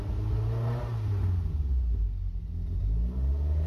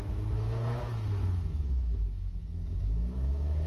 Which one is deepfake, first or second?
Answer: second